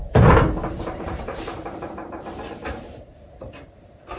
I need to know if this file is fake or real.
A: fake